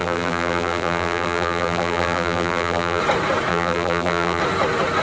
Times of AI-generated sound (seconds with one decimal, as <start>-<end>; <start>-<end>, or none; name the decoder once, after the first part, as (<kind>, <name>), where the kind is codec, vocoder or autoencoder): 0.0-3.0 (vocoder, BigVGAN v2); 3.5-4.4